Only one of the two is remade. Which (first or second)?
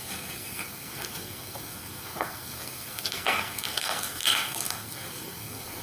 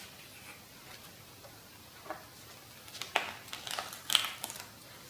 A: first